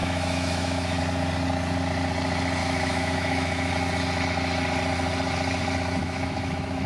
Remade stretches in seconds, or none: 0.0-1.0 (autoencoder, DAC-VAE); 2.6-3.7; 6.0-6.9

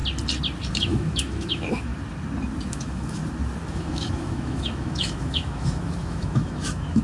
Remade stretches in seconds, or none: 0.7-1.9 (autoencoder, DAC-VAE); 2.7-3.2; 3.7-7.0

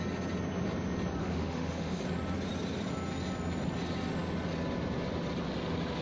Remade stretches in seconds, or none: 1.2-2.0 (autoencoder, DAC-VAE)

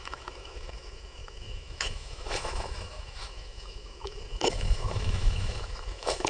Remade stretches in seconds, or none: 0.0-6.3 (autoencoder, DAC-VAE)